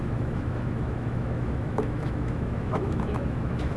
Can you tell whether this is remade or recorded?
remade